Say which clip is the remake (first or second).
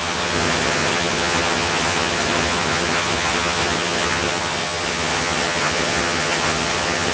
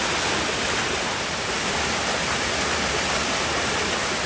first